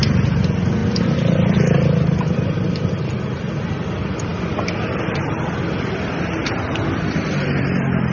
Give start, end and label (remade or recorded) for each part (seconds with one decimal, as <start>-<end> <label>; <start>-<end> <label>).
0.0-8.1 recorded